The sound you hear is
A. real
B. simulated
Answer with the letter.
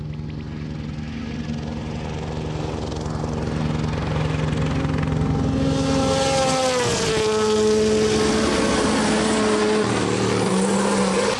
A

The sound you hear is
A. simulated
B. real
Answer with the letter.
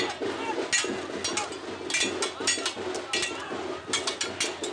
B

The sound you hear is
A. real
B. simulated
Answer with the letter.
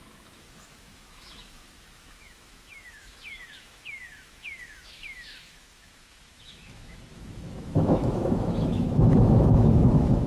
B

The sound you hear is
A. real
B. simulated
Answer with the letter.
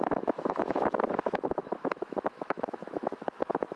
B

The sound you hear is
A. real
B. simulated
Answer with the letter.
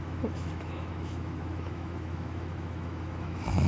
B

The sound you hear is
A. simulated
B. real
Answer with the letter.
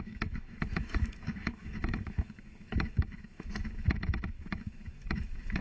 A